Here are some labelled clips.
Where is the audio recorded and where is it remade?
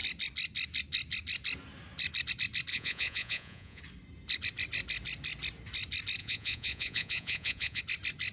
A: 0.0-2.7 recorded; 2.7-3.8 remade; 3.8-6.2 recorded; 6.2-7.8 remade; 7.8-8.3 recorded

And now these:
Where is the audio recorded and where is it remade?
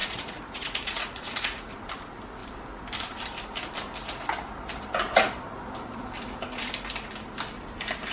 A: 0.0-1.7 remade; 1.7-8.1 recorded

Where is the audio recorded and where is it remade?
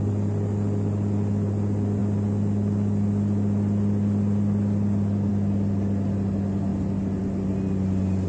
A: 0.0-8.3 recorded